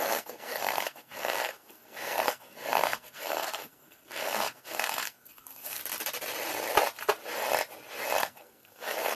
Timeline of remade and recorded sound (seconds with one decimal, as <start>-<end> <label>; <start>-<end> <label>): 0.0-5.8 remade; 5.8-8.2 recorded; 8.2-9.1 remade

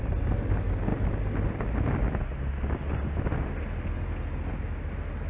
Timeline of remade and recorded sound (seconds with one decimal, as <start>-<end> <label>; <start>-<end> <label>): 0.0-5.3 recorded

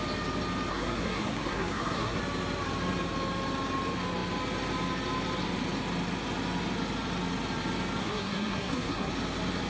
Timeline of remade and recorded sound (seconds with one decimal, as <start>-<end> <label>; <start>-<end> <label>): 0.0-0.7 recorded; 0.7-2.2 remade; 2.2-8.0 recorded; 8.0-9.1 remade; 9.1-9.7 recorded